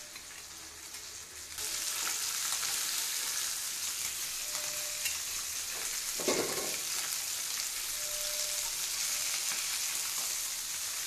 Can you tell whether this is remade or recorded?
recorded